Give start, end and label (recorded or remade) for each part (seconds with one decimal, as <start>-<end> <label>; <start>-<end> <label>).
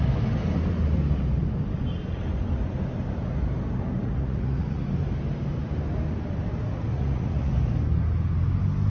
0.0-4.0 recorded; 4.0-4.8 remade; 4.8-6.9 recorded; 6.9-7.5 remade; 7.5-8.9 recorded